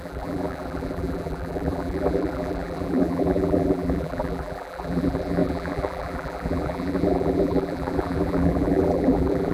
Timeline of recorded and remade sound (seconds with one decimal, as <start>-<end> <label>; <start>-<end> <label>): 0.0-9.5 remade